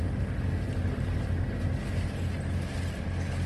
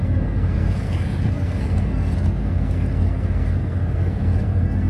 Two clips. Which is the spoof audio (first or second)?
second